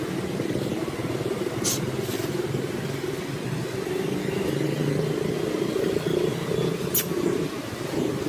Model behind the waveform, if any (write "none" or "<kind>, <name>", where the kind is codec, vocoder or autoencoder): none